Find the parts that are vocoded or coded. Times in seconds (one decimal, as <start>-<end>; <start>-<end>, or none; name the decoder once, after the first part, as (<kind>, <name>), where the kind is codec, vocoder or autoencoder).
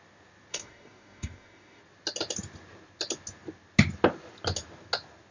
0.5-1.8 (codec, DAC)